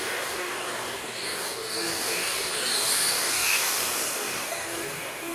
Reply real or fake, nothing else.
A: fake